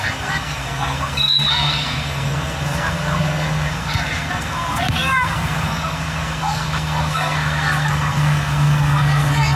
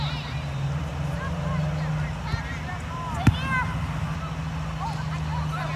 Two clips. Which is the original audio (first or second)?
second